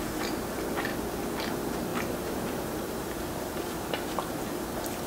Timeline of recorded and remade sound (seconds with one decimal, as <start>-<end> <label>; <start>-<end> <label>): 0.0-1.9 recorded; 1.9-3.7 remade; 3.7-5.1 recorded